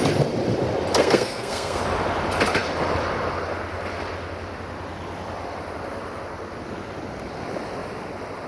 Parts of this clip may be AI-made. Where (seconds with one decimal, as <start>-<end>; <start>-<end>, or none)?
1.0-1.8